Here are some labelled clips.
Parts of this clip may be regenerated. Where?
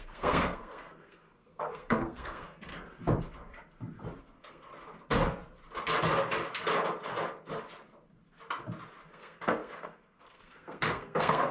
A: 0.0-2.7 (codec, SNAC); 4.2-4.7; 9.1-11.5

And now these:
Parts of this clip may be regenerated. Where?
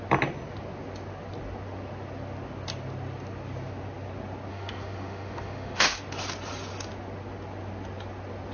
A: 4.5-6.0 (autoencoder, DAC-VAE)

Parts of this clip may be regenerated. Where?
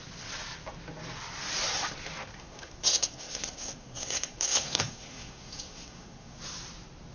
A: 2.3-6.4 (codec, SNAC)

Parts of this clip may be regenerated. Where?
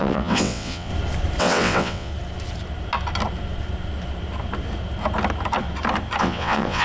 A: 0.0-0.9 (vocoder, WaveNeXt); 1.4-2.1; 6.2-6.8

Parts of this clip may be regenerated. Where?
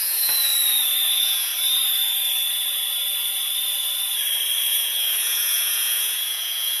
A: 0.0-0.5 (vocoder, Vocos); 1.1-1.5; 4.7-6.8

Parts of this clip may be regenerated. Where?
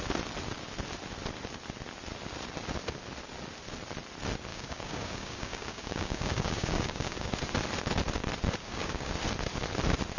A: 4.5-7.3 (codec, DAC); 8.6-9.1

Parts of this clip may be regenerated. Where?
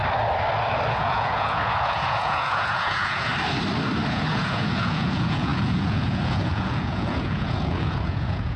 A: 0.9-3.3 (vocoder, Vocos); 4.1-8.6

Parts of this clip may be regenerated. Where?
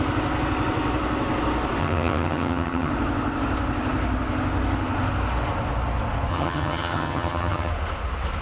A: 1.8-2.9 (vocoder, HiFi-GAN); 6.3-7.7